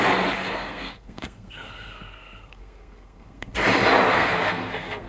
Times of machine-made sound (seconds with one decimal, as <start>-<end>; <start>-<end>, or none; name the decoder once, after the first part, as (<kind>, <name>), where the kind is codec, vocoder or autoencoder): 0.4-3.5 (codec, SNAC); 4.1-5.1